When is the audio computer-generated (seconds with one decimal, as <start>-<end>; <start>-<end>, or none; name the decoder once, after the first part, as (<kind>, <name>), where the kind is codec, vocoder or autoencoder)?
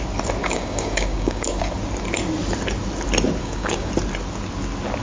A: 0.4-1.6 (codec, DAC); 3.4-3.9